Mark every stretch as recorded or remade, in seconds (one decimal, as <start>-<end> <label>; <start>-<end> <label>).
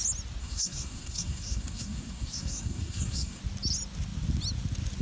0.0-0.4 recorded; 0.4-3.4 remade; 3.4-5.0 recorded